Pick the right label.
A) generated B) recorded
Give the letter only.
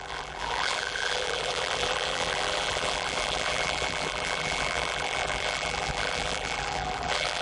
A